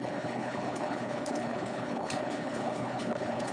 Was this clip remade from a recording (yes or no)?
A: yes